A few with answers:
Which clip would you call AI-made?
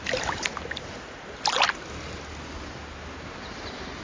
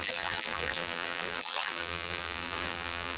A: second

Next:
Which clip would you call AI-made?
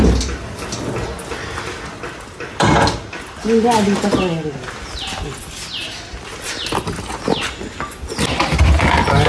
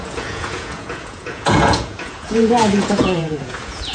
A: second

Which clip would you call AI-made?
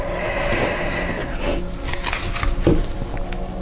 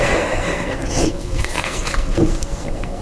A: second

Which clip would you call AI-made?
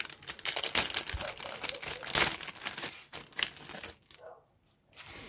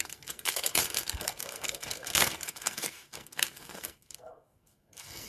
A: second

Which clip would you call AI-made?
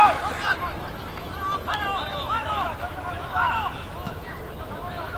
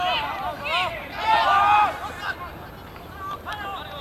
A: first